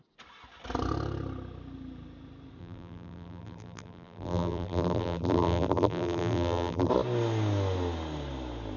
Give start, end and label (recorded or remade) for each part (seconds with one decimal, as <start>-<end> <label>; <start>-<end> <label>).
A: 0.0-2.6 recorded; 2.6-6.9 remade; 6.9-8.8 recorded